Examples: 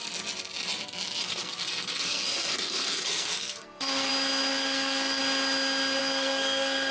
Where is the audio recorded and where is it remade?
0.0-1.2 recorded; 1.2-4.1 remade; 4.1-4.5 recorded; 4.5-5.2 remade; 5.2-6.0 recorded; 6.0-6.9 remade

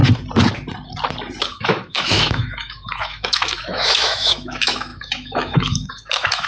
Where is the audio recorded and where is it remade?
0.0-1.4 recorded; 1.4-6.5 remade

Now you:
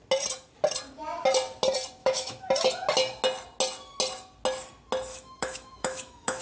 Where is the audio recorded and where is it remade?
0.0-2.0 recorded; 2.0-2.5 remade; 2.5-5.1 recorded; 5.1-6.4 remade

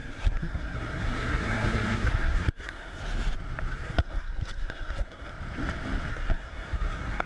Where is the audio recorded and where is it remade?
0.0-3.0 remade; 3.0-3.7 recorded; 3.7-5.3 remade; 5.3-6.1 recorded; 6.1-7.3 remade

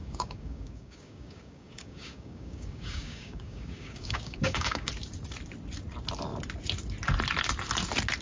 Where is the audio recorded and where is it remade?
0.0-4.9 remade; 4.9-8.2 recorded